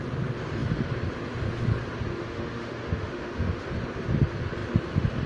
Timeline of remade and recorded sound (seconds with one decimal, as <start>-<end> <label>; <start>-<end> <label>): 0.0-2.1 recorded; 2.1-3.6 remade; 3.6-5.3 recorded